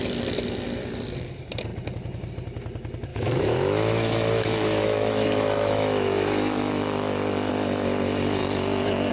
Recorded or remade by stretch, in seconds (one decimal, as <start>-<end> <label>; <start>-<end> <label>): 0.0-3.1 recorded; 3.1-7.5 remade; 7.5-8.4 recorded; 8.4-9.1 remade